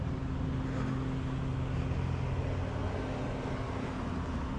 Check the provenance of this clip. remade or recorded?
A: recorded